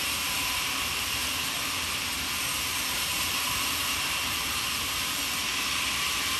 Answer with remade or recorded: remade